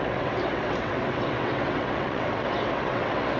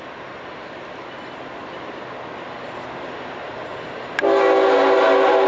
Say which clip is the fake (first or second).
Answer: first